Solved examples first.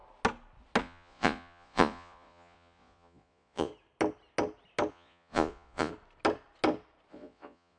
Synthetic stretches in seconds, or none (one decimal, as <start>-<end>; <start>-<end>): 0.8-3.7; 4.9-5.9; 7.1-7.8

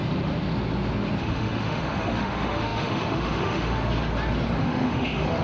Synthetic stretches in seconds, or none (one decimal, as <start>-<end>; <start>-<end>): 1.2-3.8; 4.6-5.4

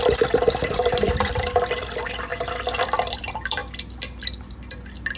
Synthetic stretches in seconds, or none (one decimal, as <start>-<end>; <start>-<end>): 0.0-2.3; 2.8-3.6

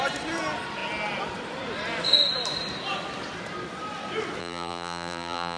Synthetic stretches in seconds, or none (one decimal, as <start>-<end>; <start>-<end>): 4.4-5.6